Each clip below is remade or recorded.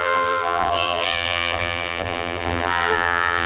remade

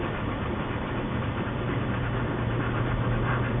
remade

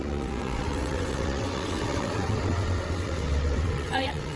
remade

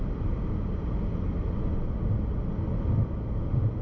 recorded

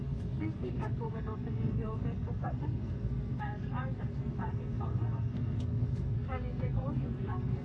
remade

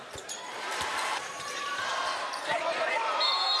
remade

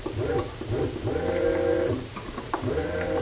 remade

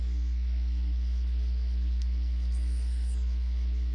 remade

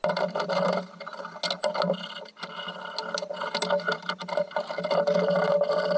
recorded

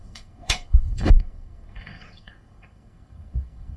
remade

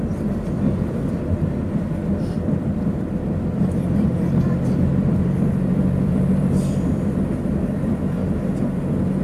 remade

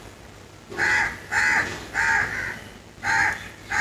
recorded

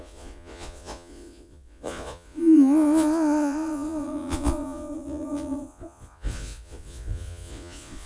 remade